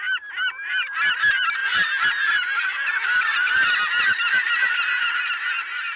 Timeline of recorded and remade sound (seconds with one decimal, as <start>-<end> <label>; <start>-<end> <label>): 0.0-1.6 recorded; 1.6-5.2 remade; 5.2-6.0 recorded